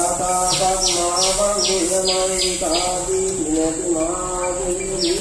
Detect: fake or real real